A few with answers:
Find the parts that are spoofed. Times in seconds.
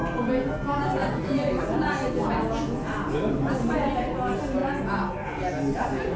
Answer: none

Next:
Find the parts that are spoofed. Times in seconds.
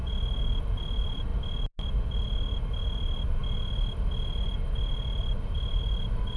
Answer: none